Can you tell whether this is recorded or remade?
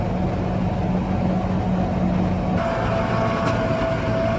recorded